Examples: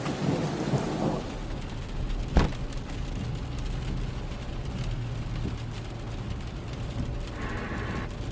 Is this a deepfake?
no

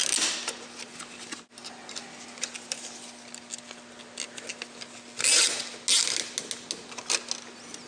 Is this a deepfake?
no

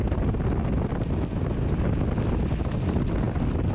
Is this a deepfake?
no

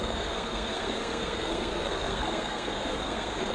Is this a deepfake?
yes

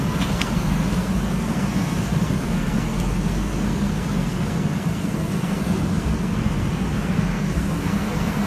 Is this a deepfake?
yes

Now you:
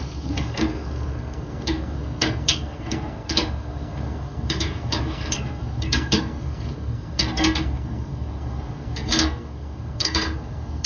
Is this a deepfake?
yes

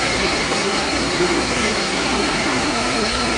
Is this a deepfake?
yes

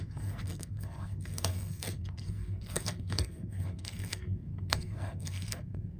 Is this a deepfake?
yes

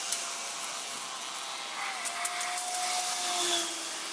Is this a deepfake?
no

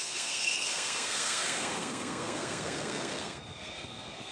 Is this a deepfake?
yes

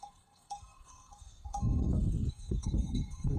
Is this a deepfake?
yes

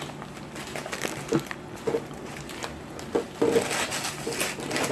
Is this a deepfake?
no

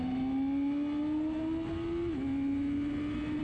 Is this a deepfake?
no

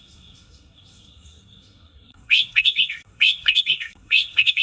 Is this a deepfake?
yes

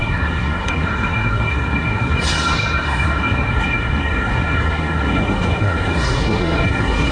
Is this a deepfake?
yes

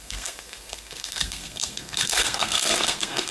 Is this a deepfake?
yes